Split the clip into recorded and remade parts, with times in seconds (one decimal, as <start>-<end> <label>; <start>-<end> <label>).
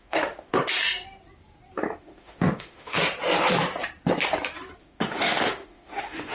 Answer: 0.0-0.5 remade; 0.5-2.0 recorded; 2.0-3.0 remade; 3.0-4.8 recorded; 4.8-6.3 remade